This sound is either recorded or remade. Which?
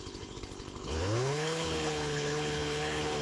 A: remade